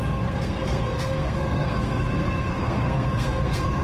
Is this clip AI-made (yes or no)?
yes